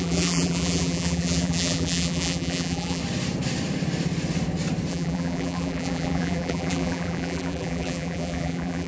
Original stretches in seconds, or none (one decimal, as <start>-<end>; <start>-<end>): 3.0-4.9